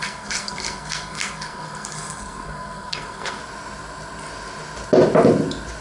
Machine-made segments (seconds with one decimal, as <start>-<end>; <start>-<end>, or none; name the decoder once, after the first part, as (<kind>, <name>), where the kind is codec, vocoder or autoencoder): 0.0-3.4 (codec, SNAC)